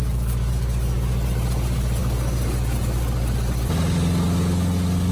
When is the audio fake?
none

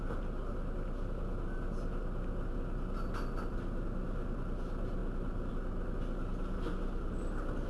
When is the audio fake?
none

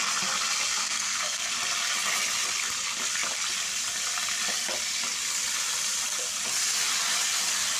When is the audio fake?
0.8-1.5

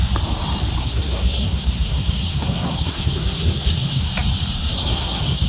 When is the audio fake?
0.8-4.1; 4.6-5.5

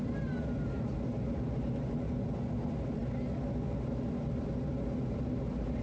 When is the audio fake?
none